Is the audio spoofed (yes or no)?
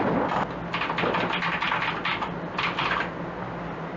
no